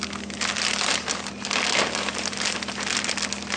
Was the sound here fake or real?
real